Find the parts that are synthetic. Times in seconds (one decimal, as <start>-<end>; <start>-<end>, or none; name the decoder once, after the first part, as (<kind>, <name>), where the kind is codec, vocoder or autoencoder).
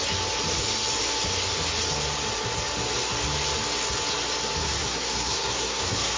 4.6-6.2 (codec, SNAC)